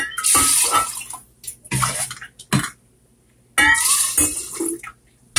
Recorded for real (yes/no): yes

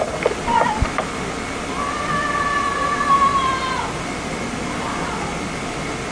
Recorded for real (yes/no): yes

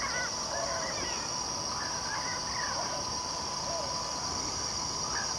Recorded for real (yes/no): yes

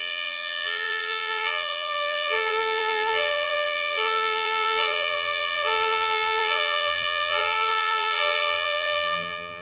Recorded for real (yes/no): no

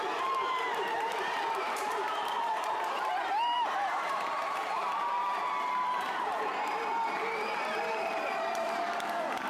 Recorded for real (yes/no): no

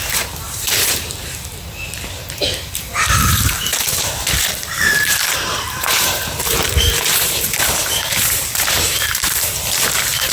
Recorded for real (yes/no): no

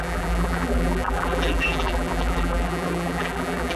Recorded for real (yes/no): no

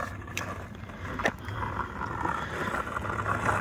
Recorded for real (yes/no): no